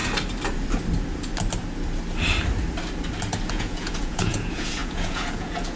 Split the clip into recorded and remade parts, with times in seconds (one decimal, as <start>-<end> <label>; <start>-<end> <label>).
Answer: 0.0-3.5 recorded; 3.5-5.8 remade